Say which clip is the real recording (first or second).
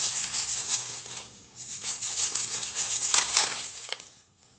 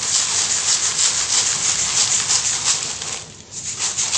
second